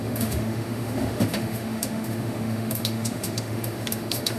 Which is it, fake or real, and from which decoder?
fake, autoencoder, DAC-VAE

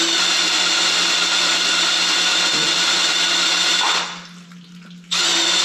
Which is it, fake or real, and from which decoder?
real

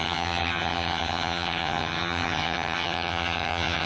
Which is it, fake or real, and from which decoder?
fake, vocoder, HiFi-GAN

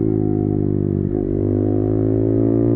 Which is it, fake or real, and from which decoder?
real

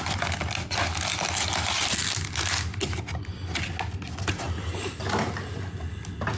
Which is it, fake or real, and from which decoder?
real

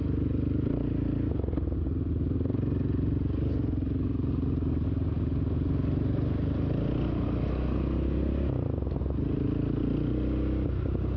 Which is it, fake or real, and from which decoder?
real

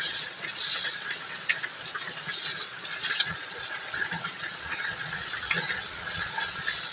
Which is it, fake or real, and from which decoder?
fake, vocoder, Vocos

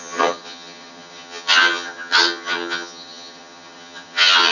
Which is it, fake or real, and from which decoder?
fake, vocoder, HiFi-GAN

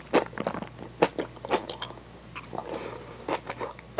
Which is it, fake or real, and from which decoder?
real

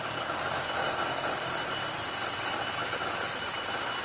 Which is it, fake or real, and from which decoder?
real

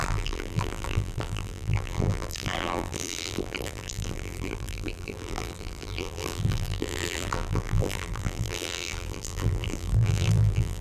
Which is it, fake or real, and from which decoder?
fake, vocoder, BigVGAN v2